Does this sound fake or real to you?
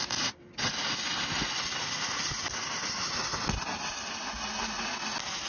real